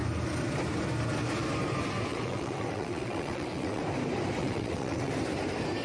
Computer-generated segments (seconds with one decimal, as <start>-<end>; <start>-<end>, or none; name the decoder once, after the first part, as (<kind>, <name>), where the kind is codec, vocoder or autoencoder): 2.1-3.8 (vocoder, WaveNeXt); 4.4-5.1